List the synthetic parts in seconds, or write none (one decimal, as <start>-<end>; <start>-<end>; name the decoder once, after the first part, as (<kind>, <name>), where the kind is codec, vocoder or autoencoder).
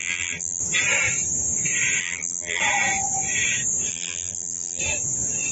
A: 0.0-0.6 (vocoder, BigVGAN v2); 2.0-2.6; 3.9-4.8